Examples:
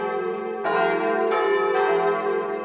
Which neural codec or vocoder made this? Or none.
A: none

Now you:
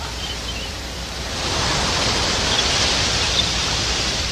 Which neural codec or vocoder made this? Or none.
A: vocoder, BigVGAN v2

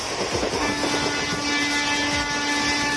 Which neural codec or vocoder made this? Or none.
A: none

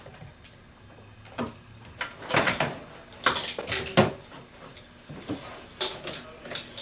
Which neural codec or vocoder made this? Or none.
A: none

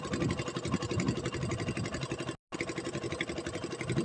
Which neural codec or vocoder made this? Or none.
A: none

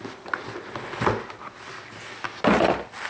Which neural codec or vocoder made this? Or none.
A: none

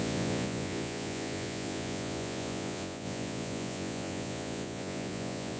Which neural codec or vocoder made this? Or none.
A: vocoder, Vocos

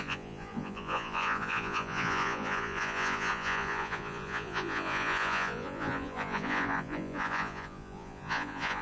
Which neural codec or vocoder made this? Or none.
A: vocoder, Vocos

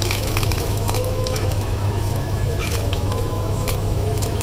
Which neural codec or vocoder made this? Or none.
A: autoencoder, DAC-VAE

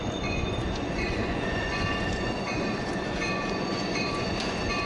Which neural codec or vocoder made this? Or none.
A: vocoder, Vocos